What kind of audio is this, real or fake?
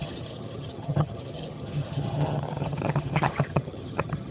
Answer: fake